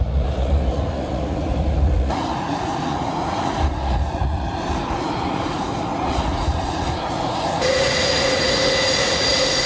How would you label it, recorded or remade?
remade